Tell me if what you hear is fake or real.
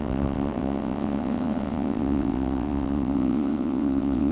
fake